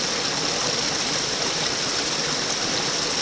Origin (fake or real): real